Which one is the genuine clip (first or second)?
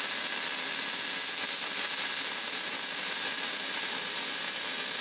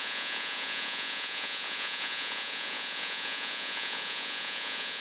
first